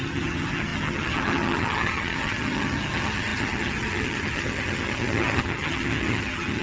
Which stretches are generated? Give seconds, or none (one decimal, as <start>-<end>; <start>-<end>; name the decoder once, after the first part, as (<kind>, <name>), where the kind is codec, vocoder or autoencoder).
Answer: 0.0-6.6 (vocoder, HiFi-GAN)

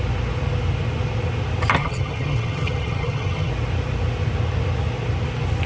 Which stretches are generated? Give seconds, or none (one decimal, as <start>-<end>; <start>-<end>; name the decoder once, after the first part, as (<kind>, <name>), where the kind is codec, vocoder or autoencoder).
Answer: 1.8-3.5 (vocoder, HiFi-GAN)

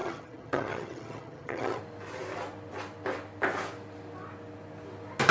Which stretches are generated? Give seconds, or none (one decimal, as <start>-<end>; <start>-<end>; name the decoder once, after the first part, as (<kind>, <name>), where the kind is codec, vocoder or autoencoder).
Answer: 0.0-1.8 (vocoder, HiFi-GAN)